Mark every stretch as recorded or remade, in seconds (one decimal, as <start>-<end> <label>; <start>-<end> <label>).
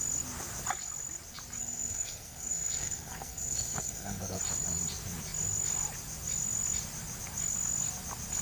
0.0-1.6 recorded; 1.6-4.4 remade; 4.4-8.4 recorded